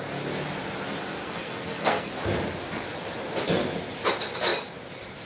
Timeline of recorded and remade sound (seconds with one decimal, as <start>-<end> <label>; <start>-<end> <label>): 0.0-1.2 recorded; 1.2-2.1 remade; 2.1-5.3 recorded